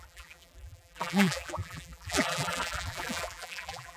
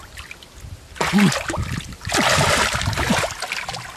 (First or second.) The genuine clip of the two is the second